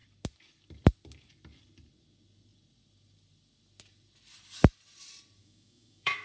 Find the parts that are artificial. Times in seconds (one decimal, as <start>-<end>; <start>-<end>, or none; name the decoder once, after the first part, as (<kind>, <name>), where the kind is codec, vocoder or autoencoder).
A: 5.4-6.2 (autoencoder, DAC-VAE)